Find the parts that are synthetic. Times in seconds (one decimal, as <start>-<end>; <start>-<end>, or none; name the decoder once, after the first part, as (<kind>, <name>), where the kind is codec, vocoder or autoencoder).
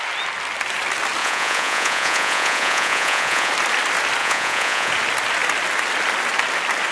1.2-3.5 (vocoder, Vocos); 4.2-4.9